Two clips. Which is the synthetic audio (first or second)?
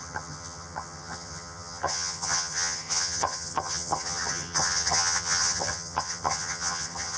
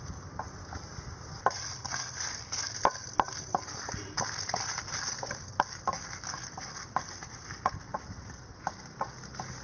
first